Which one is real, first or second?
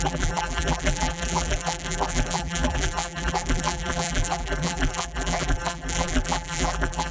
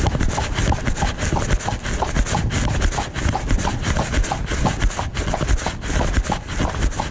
second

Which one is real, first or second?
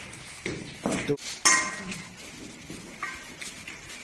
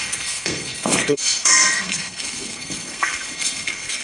first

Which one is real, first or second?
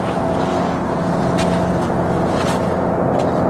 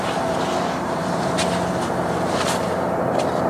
first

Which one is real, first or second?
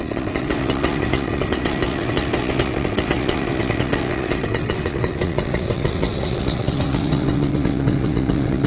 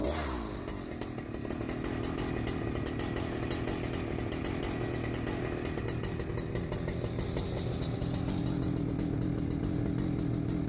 second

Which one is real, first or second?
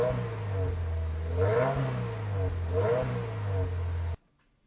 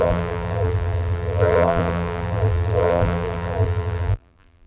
first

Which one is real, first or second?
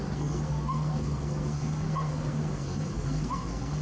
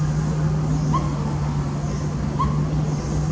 second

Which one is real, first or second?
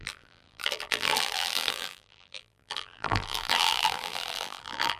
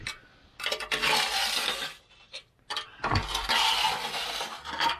second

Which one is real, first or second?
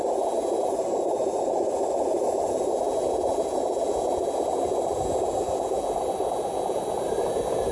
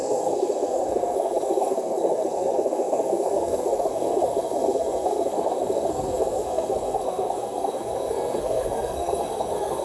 first